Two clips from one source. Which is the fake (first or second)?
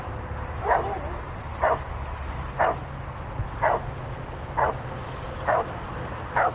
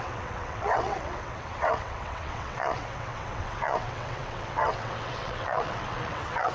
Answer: second